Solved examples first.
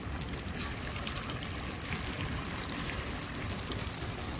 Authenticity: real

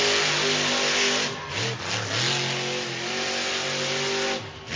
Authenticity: real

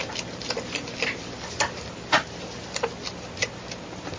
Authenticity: real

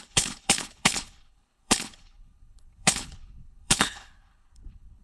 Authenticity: fake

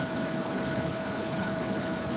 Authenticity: fake